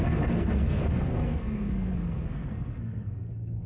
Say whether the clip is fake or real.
fake